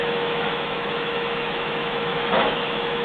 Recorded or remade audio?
remade